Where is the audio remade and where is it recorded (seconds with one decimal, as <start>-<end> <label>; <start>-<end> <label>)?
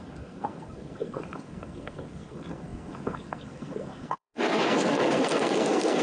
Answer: 0.0-6.0 remade